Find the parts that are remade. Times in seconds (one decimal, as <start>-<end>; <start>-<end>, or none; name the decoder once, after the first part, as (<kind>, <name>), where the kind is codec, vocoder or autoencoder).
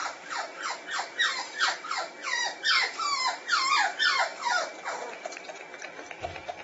0.0-6.6 (vocoder, BigVGAN v2)